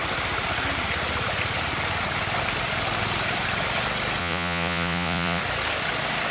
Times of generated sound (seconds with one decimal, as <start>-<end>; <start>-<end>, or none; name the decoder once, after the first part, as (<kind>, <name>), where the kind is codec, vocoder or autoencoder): 4.2-5.4 (vocoder, Vocos)